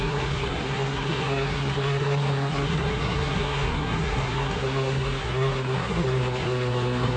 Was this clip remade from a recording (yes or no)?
yes